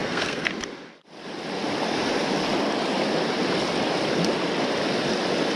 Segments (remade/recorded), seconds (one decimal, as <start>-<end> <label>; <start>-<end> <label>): 0.0-0.5 remade; 0.5-5.6 recorded